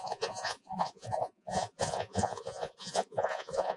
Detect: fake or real fake